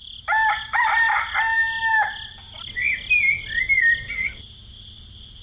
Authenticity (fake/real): real